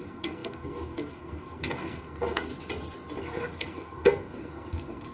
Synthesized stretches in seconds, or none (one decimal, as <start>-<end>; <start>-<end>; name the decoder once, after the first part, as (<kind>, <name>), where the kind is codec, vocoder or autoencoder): 0.0-2.5 (codec, SNAC); 3.2-5.1